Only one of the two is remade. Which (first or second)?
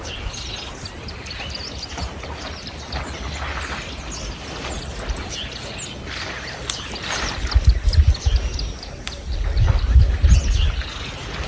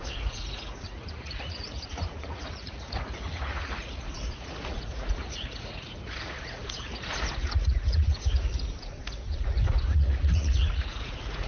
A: second